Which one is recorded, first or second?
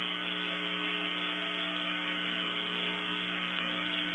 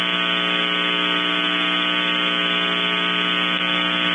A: second